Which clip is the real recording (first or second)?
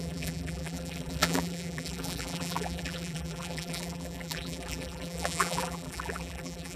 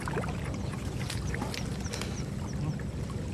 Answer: second